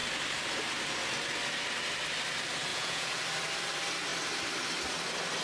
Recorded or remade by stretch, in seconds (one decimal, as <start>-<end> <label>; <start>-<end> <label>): 0.0-2.7 recorded; 2.7-3.2 remade; 3.2-5.4 recorded